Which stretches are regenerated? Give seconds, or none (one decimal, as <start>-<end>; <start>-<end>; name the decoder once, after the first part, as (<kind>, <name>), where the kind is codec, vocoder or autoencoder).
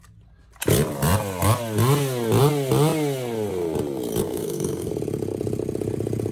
4.2-4.9 (codec, SNAC)